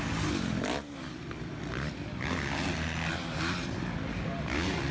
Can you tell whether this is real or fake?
real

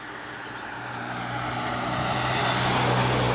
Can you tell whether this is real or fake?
real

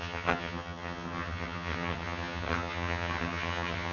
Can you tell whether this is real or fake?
fake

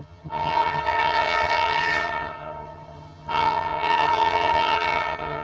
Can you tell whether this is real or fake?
fake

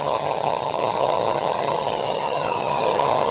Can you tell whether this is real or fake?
fake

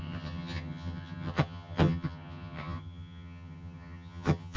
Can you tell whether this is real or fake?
fake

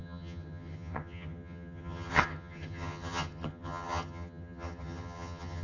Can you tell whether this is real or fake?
fake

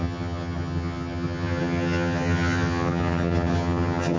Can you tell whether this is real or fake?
fake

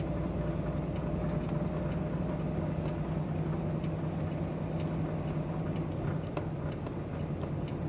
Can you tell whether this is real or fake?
real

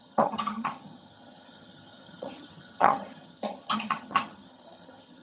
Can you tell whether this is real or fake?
fake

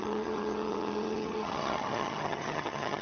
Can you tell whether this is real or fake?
fake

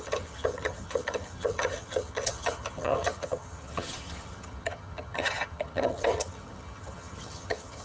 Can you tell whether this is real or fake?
fake